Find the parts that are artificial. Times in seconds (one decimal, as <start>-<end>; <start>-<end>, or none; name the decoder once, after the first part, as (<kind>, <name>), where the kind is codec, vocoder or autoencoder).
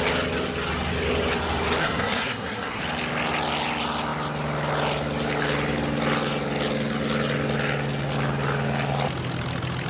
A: 1.8-2.8 (codec, SNAC)